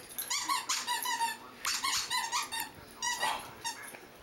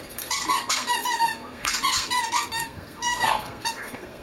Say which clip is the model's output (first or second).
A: second